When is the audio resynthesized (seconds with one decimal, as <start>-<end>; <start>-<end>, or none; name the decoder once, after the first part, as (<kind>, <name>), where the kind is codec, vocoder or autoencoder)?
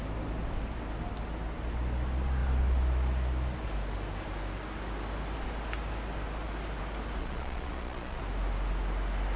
7.2-8.2 (vocoder, Vocos)